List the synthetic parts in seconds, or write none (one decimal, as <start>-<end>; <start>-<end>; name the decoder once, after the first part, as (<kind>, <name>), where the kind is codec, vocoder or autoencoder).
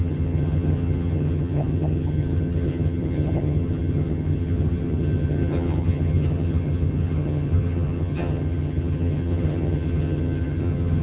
0.0-11.0 (vocoder, HiFi-GAN)